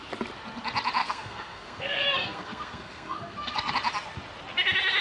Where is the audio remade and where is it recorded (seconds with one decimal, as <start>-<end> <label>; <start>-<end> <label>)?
0.0-1.0 recorded; 1.0-3.7 remade; 3.7-5.0 recorded